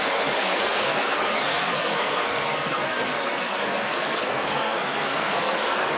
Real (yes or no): no